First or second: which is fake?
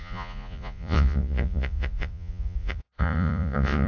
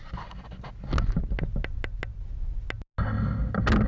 first